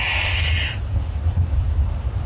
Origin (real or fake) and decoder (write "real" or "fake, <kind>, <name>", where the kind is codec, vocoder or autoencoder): real